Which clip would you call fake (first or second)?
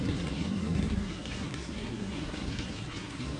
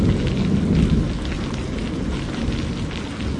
first